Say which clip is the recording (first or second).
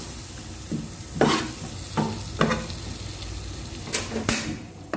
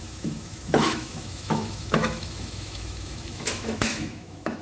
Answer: first